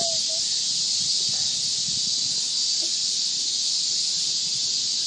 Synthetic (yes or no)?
no